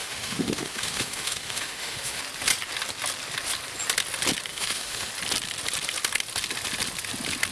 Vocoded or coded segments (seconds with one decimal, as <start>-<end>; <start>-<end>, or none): 0.0-2.2; 4.5-5.1